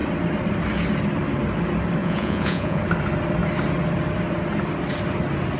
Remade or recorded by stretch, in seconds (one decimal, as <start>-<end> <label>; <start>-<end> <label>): 0.0-2.0 recorded; 2.0-2.8 remade; 2.8-5.6 recorded